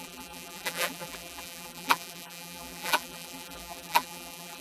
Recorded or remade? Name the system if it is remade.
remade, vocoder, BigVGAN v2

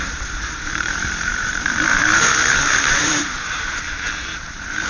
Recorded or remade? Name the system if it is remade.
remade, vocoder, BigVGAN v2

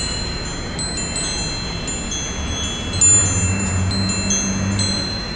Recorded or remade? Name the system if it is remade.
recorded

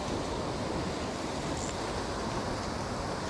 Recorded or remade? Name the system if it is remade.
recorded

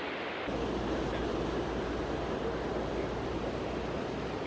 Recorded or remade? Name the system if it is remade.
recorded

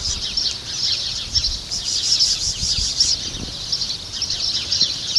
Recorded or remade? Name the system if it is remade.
recorded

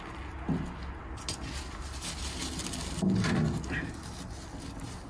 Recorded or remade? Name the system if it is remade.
recorded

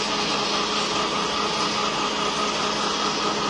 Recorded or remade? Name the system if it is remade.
recorded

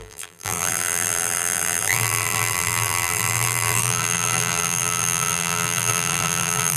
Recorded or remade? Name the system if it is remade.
remade, vocoder, BigVGAN v2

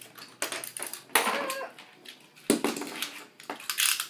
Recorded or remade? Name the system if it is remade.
recorded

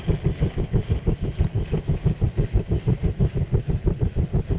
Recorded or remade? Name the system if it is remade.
recorded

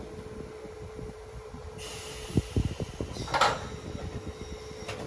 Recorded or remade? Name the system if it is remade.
recorded